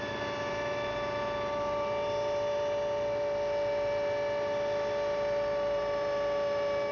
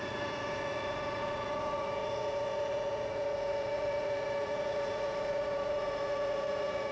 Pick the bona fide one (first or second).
first